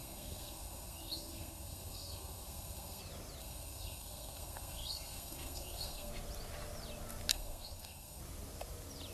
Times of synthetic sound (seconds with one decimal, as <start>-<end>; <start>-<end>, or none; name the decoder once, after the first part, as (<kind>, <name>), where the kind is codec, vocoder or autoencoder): 0.0-3.0 (codec, SNAC); 3.4-6.1; 7.3-8.2